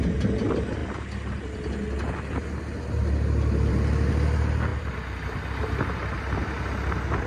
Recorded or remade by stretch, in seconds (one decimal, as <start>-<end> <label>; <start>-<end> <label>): 0.0-7.3 recorded